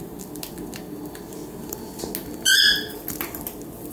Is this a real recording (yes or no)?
yes